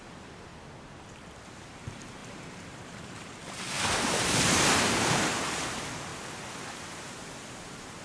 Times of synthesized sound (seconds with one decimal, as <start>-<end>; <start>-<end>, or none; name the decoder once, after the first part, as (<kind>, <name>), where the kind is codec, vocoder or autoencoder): 0.0-0.5 (vocoder, BigVGAN v2); 1.0-6.1; 6.7-8.0